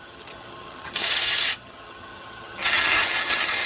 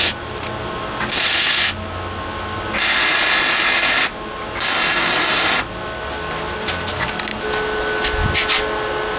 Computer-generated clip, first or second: first